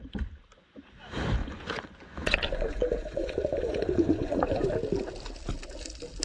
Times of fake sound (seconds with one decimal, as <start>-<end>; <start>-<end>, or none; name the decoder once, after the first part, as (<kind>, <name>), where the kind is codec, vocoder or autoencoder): 1.4-4.7 (vocoder, Vocos)